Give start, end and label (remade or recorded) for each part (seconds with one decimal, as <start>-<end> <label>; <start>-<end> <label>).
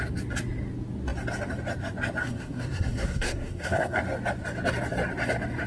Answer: 0.0-2.2 recorded; 2.2-4.0 remade; 4.0-5.7 recorded